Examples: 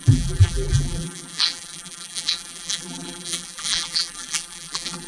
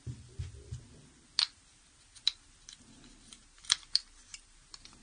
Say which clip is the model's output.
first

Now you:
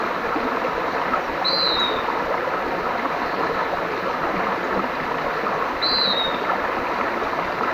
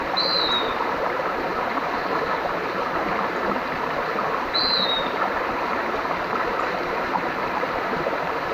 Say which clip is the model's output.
second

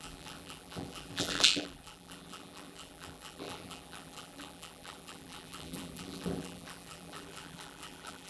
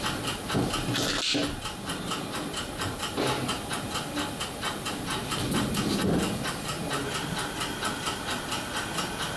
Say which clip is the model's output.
first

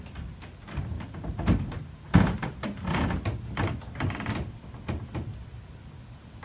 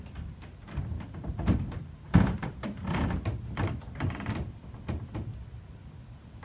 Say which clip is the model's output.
second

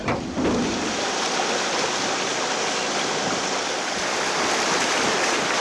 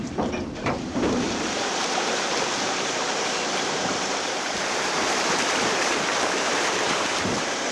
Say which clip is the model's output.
second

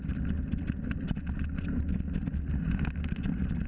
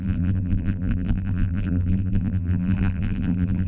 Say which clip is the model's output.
second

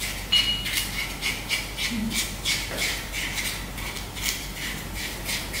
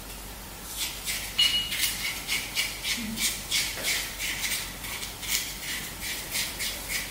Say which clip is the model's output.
second